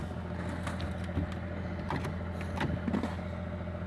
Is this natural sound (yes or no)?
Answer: yes